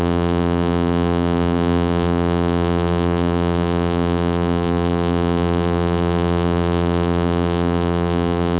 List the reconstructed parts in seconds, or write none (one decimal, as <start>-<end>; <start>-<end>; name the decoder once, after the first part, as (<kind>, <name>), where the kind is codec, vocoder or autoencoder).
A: 0.0-8.6 (vocoder, BigVGAN v2)